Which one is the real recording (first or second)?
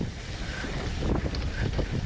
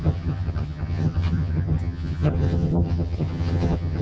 first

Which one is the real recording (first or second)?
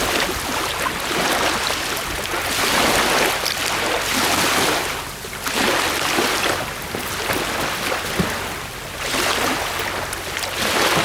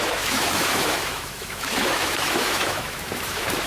first